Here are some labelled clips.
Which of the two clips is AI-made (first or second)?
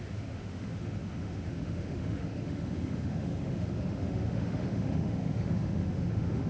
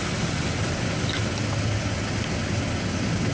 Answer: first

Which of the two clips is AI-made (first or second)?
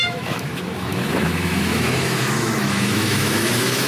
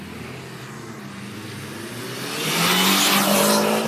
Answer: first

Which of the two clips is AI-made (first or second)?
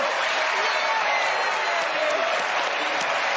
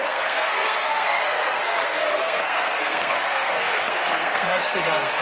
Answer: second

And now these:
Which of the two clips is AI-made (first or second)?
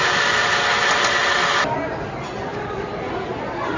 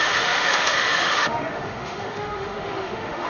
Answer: second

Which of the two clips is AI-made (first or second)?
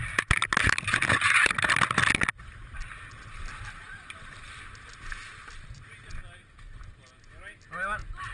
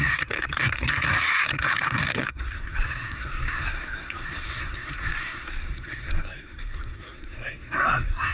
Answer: second